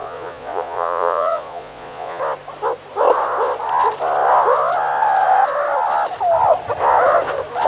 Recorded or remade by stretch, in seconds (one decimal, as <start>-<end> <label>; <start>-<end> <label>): 0.0-2.2 remade; 2.2-7.7 recorded